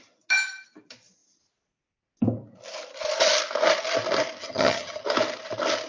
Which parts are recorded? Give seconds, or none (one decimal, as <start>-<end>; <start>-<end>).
0.0-4.4; 5.0-5.9